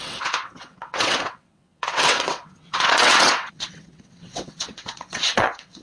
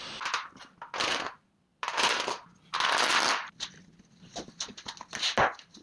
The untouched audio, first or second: second